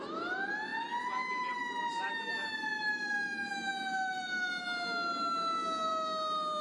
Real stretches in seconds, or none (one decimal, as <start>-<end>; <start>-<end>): 0.0-2.7; 4.5-6.6